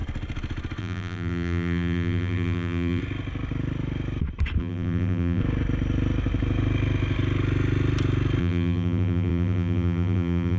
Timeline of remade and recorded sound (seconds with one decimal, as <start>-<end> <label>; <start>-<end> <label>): 0.0-0.8 recorded; 0.8-3.0 remade; 3.0-4.6 recorded; 4.6-5.4 remade; 5.4-8.4 recorded; 8.4-10.6 remade